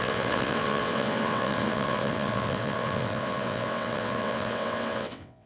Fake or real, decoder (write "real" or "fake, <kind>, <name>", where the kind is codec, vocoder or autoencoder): fake, vocoder, WaveNeXt